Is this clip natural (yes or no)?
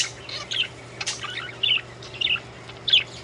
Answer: yes